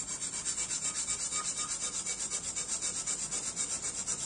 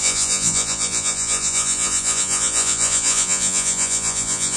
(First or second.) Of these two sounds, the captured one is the first